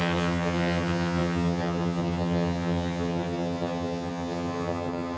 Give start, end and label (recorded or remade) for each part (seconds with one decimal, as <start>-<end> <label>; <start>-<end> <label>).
0.0-5.2 remade